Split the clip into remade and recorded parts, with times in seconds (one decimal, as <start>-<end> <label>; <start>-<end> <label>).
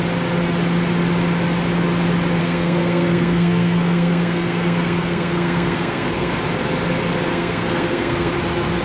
0.0-2.4 recorded; 2.4-6.3 remade; 6.3-7.3 recorded; 7.3-8.3 remade; 8.3-8.8 recorded